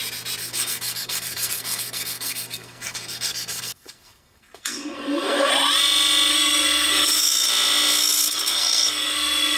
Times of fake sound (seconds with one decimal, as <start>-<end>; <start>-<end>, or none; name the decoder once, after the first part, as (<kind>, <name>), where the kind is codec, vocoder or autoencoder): 0.4-5.5 (codec, SNAC); 6.3-7.5; 8.0-9.6